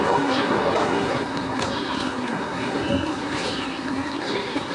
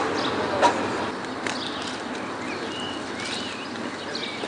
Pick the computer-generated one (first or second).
first